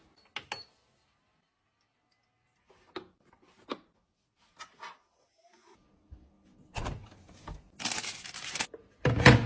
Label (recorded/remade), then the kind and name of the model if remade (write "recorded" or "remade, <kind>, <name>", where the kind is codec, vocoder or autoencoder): recorded